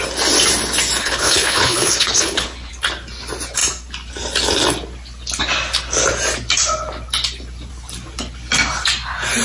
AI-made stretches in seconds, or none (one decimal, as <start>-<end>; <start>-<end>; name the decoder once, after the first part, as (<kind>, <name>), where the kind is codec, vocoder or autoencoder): 1.0-2.7 (codec, HILCodec)